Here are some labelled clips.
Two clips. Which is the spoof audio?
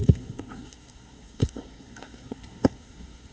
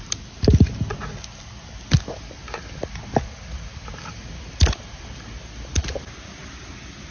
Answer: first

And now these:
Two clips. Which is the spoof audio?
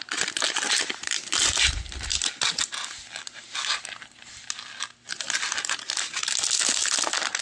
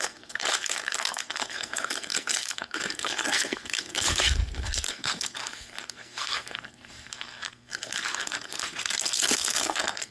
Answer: second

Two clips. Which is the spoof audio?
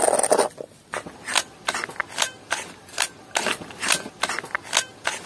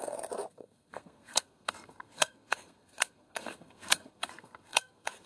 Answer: second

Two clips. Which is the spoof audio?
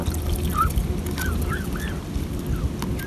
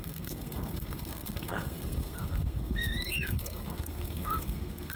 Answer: second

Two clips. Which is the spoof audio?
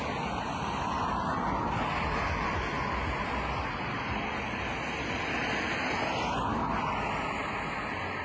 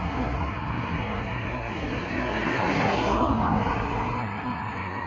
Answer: second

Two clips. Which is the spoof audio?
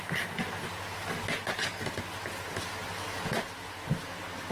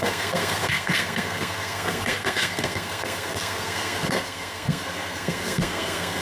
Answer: second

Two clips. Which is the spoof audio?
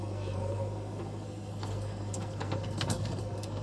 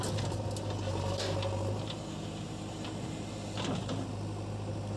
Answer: first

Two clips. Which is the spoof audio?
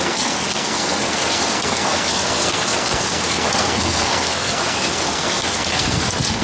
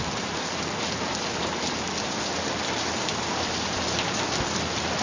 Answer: first